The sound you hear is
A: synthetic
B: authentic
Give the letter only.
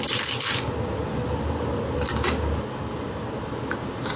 B